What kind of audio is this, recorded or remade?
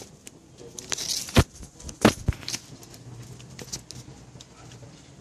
recorded